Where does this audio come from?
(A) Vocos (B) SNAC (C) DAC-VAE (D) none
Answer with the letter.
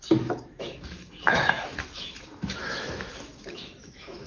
C